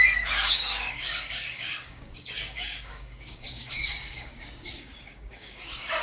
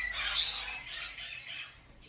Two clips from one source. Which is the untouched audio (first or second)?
second